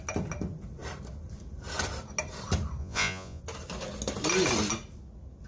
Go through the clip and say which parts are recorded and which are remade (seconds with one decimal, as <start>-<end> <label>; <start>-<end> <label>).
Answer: 0.0-2.8 recorded; 2.8-3.4 remade; 3.4-5.5 recorded